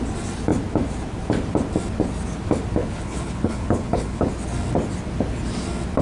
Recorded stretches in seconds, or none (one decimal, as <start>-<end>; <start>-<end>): 0.0-2.8; 4.3-6.0